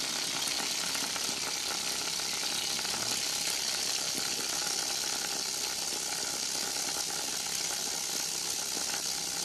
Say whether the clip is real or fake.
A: real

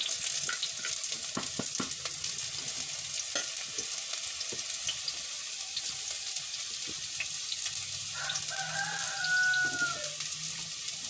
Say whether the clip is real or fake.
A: real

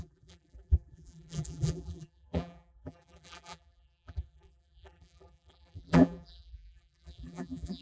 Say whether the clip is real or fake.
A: fake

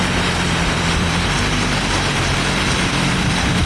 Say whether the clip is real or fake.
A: fake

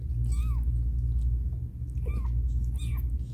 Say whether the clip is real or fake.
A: real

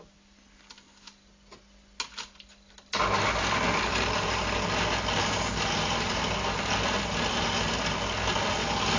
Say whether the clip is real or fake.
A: real